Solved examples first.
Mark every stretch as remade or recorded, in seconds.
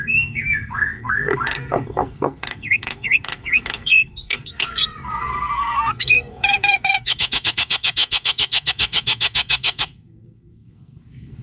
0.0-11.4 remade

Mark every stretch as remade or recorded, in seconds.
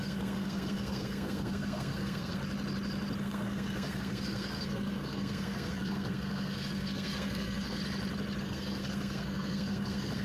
0.0-2.4 remade; 2.4-3.2 recorded; 3.2-7.8 remade; 7.8-8.4 recorded; 8.4-10.2 remade